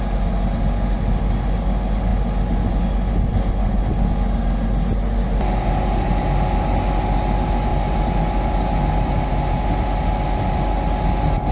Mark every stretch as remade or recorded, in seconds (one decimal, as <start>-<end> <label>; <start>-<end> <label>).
0.0-11.5 recorded